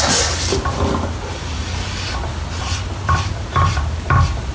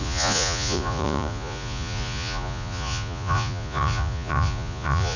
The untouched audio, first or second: first